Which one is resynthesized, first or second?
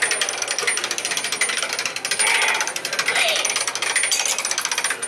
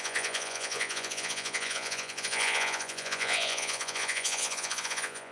second